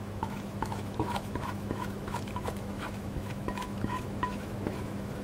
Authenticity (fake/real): fake